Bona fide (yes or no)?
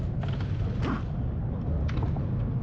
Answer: yes